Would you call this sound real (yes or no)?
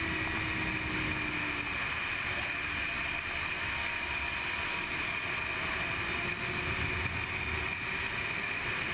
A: yes